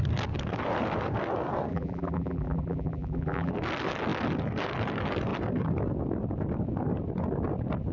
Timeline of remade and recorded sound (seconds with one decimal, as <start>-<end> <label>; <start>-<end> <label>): 0.0-1.7 recorded; 1.7-3.5 remade; 3.5-7.9 recorded